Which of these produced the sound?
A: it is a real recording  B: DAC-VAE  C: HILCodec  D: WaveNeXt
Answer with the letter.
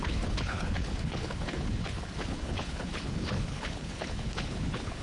C